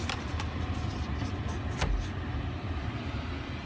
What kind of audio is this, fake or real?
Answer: real